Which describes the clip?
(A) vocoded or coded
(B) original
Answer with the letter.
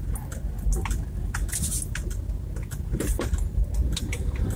B